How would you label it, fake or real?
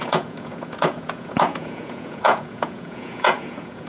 fake